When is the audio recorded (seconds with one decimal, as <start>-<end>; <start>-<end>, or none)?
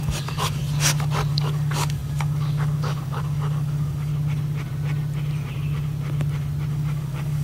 0.6-1.3; 4.1-6.7